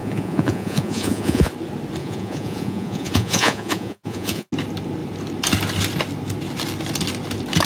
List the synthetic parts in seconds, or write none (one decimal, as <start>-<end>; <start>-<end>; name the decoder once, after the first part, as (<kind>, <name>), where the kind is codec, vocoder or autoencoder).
0.0-1.5 (vocoder, Vocos); 2.0-4.5